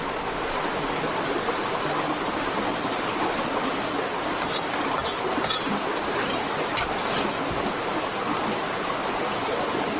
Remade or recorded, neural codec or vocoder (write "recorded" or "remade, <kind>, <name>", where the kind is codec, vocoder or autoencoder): recorded